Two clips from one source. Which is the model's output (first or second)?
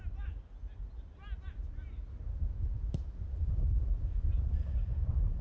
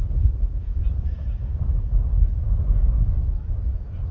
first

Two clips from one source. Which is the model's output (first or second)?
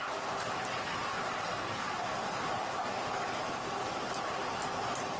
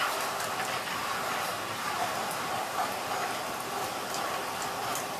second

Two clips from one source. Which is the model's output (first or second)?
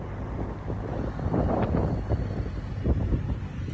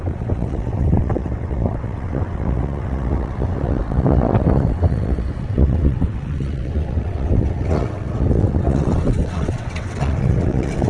second